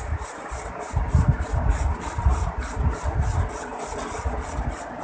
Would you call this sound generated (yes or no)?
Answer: no